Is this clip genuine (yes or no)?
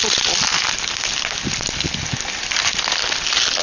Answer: yes